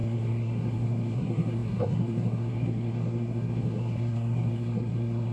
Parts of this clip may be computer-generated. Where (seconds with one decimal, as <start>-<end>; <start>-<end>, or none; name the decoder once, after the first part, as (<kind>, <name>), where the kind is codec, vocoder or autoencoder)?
0.0-5.3 (codec, SNAC)